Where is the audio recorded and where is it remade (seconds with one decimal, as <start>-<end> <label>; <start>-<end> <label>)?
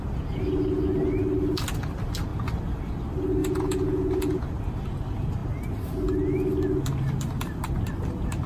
0.0-3.4 recorded; 3.4-4.5 remade; 4.5-8.5 recorded